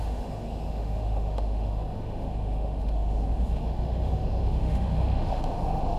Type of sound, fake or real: fake